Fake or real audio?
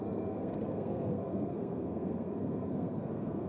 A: fake